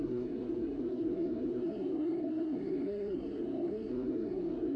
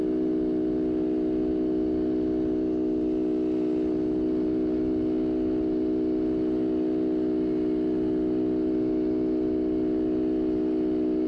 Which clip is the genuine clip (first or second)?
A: second